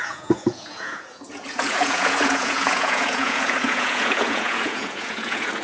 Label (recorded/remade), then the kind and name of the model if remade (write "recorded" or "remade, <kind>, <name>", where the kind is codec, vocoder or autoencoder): remade, vocoder, Vocos